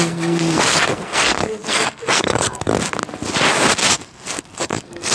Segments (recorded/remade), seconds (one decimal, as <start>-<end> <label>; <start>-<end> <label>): 0.0-2.7 remade; 2.7-3.9 recorded; 3.9-5.1 remade